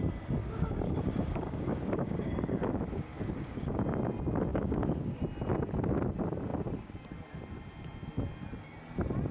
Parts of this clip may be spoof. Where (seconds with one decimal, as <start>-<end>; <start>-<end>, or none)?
0.4-3.8; 4.5-5.2